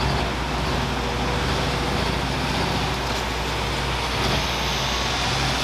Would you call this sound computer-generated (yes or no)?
no